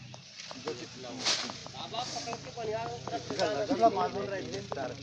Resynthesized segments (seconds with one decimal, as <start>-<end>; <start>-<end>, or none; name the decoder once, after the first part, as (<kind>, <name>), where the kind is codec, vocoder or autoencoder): none